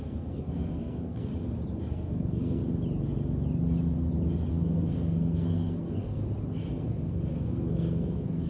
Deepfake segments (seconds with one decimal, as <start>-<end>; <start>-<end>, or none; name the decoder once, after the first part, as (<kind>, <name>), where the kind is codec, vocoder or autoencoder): 0.0-1.3 (codec, SNAC); 1.9-2.6; 4.5-6.2; 6.7-8.5